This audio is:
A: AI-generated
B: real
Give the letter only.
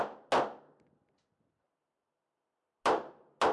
B